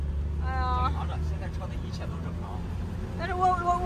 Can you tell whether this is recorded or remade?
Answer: recorded